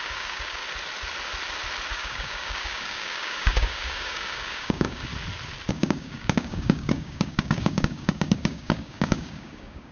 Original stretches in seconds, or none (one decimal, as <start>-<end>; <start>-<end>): 0.6-1.9; 5.1-5.7